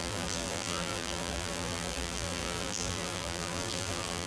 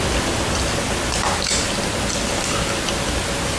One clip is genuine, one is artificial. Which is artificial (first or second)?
first